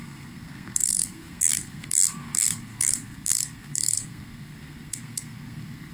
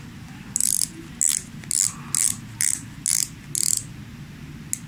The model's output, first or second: first